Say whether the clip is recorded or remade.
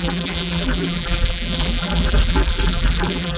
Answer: remade